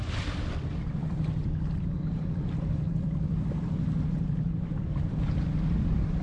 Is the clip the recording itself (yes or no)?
no